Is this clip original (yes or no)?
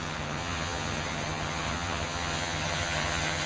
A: no